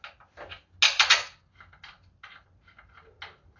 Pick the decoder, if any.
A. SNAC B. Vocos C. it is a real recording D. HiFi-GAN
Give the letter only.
C